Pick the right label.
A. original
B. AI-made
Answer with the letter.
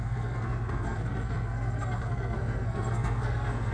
B